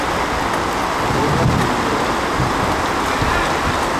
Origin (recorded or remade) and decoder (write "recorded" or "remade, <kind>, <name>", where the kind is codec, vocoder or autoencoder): recorded